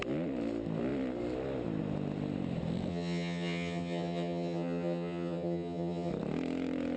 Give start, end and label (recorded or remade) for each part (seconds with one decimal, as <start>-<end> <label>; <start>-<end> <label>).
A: 0.0-2.9 recorded; 2.9-6.1 remade; 6.1-7.0 recorded